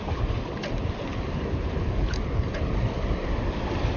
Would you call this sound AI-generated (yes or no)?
no